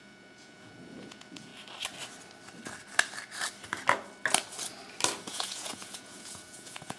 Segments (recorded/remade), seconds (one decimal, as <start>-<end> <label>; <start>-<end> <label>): 0.0-1.5 remade; 1.5-5.3 recorded; 5.3-7.0 remade